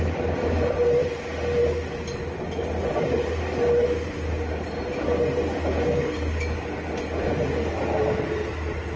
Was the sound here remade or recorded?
recorded